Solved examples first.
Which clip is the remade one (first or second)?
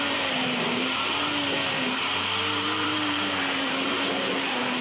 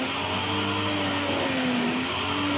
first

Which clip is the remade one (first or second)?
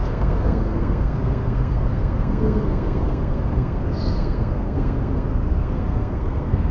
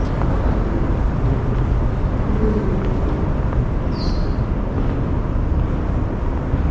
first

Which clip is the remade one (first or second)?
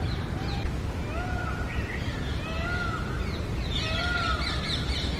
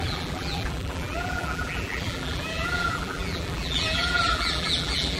second